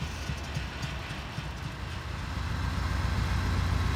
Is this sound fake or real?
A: real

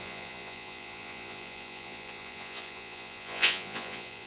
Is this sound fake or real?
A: fake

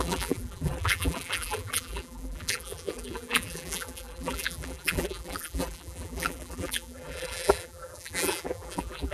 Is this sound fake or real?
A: fake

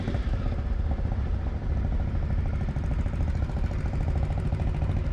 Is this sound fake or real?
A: fake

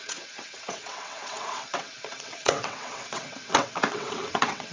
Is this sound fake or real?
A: fake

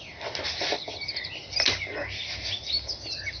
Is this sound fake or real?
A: real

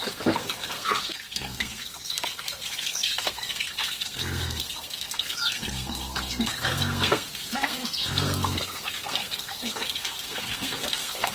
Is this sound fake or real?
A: fake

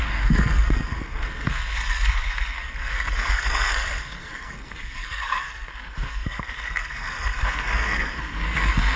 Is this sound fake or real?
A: fake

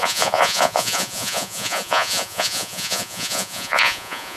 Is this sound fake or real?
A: fake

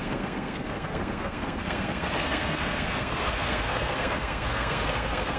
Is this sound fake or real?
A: fake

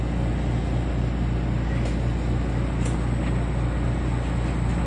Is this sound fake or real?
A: real